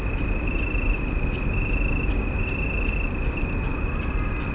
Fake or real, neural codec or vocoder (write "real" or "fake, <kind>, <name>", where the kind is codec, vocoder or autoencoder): real